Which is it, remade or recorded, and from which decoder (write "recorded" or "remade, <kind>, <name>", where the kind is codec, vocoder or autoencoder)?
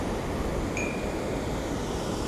recorded